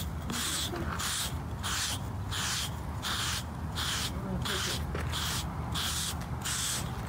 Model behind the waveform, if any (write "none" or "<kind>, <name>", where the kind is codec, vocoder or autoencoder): none